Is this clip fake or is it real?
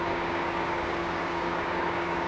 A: fake